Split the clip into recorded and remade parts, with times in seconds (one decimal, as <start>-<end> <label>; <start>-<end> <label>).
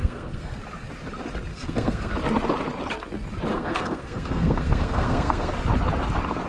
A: 0.0-0.6 remade; 0.6-1.5 recorded; 1.5-2.1 remade; 2.1-3.5 recorded; 3.5-5.5 remade; 5.5-6.5 recorded